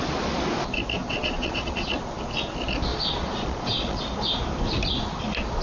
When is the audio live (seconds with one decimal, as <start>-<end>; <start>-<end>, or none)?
0.0-1.0; 1.9-2.9; 4.0-5.6